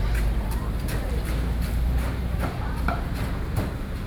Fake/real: fake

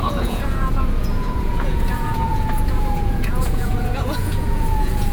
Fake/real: fake